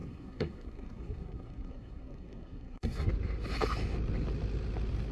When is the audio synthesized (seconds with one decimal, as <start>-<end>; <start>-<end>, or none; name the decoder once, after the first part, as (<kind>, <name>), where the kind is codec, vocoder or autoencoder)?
0.0-3.1 (codec, SNAC)